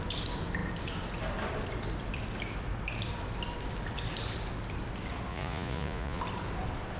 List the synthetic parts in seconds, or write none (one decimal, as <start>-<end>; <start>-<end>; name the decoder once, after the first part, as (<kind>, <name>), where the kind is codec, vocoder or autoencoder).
5.3-6.2 (vocoder, Vocos)